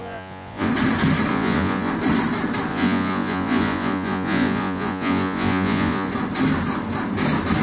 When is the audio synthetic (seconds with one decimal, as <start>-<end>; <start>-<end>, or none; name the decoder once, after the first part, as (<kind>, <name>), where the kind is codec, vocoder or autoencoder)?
0.0-0.7 (vocoder, Vocos); 1.3-1.9; 2.7-6.1

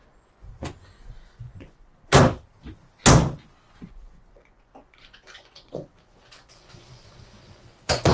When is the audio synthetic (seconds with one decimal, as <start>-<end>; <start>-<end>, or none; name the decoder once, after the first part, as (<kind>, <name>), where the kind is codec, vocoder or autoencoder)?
0.0-1.9 (vocoder, Vocos); 3.7-8.1

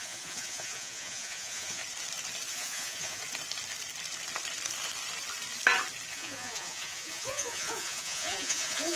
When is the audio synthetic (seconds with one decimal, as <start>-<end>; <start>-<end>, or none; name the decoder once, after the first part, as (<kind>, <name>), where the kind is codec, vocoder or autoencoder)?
0.0-1.8 (vocoder, Vocos); 2.5-3.2; 6.1-8.9

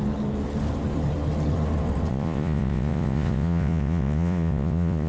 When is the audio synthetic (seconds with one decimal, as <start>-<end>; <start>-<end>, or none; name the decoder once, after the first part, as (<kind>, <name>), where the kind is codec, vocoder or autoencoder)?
2.1-5.1 (vocoder, Vocos)

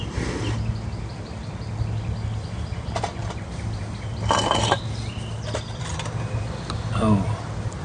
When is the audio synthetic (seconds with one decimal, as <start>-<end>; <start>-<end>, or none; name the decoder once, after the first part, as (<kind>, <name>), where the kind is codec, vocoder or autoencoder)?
none

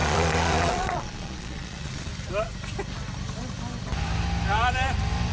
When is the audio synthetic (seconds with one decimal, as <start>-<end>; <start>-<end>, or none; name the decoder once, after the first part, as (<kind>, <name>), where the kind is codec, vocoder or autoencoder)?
0.0-2.1 (vocoder, Vocos)

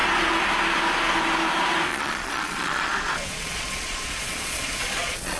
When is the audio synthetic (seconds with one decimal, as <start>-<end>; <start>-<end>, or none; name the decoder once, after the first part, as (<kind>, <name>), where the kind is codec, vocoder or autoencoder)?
1.9-5.4 (vocoder, Vocos)

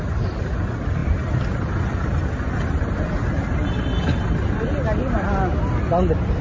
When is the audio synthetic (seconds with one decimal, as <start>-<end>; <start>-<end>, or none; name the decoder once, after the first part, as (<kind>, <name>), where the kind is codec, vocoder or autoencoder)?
none